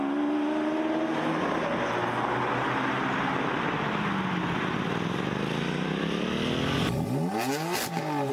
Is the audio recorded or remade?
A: recorded